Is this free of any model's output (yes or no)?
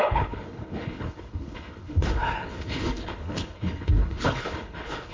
no